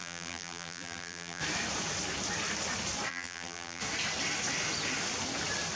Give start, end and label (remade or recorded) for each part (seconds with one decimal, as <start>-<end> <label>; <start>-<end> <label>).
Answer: 0.0-1.4 remade; 1.4-3.1 recorded; 3.1-3.8 remade; 3.8-5.8 recorded